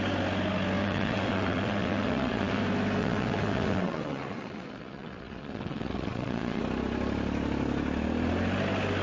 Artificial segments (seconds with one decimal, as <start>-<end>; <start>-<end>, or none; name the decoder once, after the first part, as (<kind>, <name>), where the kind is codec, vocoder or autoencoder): 0.8-2.6 (vocoder, WaveNeXt); 3.0-6.6